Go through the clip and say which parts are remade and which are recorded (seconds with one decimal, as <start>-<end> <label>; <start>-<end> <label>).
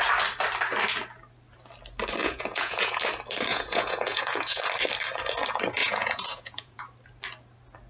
0.0-2.2 recorded; 2.2-3.0 remade; 3.0-3.5 recorded; 3.5-4.6 remade; 4.6-5.8 recorded; 5.8-6.8 remade; 6.8-7.9 recorded